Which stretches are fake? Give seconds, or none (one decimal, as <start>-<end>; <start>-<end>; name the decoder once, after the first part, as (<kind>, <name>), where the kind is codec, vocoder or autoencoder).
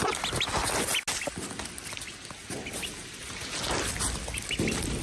none